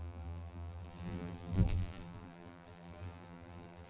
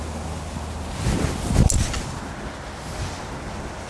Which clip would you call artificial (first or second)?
first